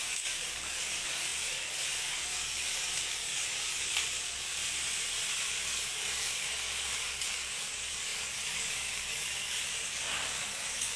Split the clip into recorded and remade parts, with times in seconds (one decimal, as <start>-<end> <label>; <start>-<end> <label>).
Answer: 0.0-4.6 remade; 4.6-5.5 recorded; 5.5-11.0 remade